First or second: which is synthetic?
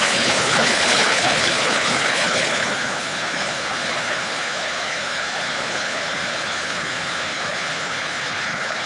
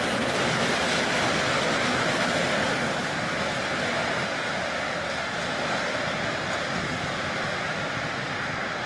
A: first